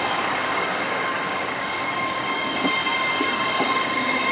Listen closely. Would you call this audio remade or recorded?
remade